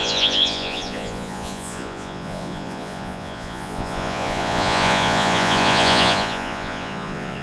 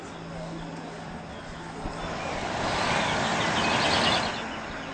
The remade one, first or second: first